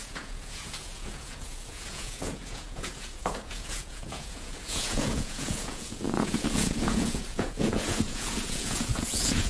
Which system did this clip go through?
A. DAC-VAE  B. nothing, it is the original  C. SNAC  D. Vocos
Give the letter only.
D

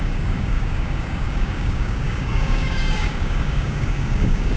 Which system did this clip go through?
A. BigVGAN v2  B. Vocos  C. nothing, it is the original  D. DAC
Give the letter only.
D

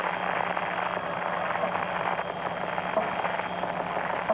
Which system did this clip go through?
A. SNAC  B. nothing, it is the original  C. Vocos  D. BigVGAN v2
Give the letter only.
B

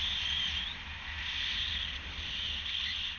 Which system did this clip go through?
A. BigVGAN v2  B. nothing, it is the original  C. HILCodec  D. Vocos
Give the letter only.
B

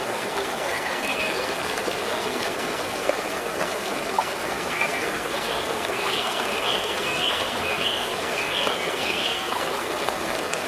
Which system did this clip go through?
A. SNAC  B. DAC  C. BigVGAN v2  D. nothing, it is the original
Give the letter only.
A